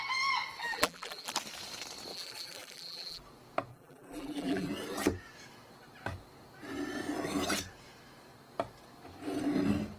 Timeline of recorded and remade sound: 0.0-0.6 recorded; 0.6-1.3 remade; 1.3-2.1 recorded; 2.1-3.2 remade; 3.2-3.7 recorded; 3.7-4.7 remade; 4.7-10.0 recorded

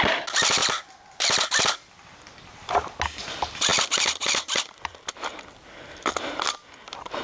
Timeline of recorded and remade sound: 0.0-3.7 recorded; 3.7-6.2 remade; 6.2-7.2 recorded

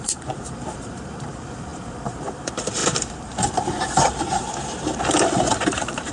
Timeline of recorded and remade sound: 0.0-6.1 remade

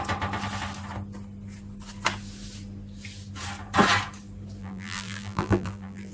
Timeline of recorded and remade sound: 0.0-4.6 recorded; 4.6-6.1 remade

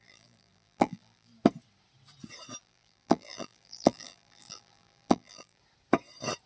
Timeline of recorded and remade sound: 0.0-1.3 remade; 1.3-2.6 recorded; 2.6-5.6 remade; 5.6-6.5 recorded

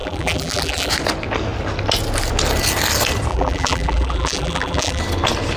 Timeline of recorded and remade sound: 0.0-0.9 remade; 0.9-3.3 recorded; 3.3-5.0 remade; 5.0-5.6 recorded